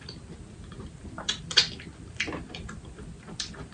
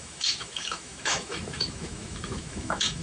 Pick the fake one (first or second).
second